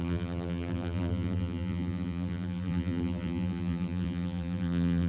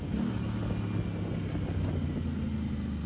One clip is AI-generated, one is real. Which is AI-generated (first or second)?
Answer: first